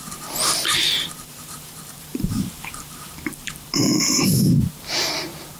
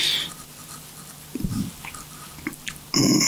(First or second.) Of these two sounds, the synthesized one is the first